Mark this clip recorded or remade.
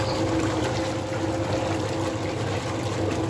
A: recorded